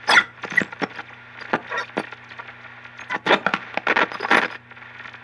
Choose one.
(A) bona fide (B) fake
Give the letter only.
A